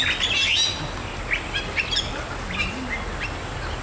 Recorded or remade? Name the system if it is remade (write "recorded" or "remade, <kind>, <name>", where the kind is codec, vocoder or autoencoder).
recorded